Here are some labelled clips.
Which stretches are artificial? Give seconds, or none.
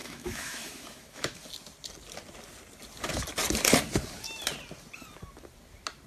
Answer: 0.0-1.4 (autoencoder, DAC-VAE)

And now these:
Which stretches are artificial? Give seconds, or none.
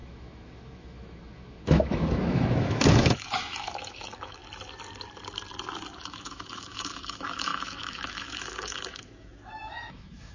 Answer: 0.0-4.4 (autoencoder, DAC-VAE); 6.0-10.3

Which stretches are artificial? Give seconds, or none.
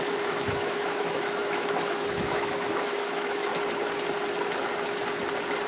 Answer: 0.0-3.5 (autoencoder, DAC-VAE)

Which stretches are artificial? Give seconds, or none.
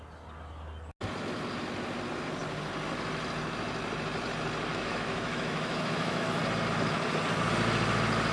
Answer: 4.7-6.4 (autoencoder, DAC-VAE)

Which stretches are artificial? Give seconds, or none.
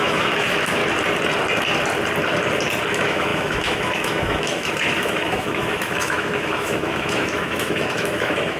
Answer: 0.0-0.8 (autoencoder, DAC-VAE); 2.9-8.6